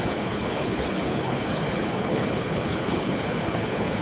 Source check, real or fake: fake